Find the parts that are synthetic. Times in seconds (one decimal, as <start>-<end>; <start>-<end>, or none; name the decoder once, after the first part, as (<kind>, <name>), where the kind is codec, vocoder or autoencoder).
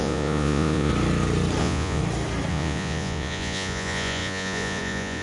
0.0-0.9 (vocoder, Vocos); 1.6-2.0; 2.5-5.2